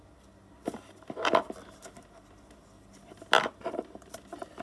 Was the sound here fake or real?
real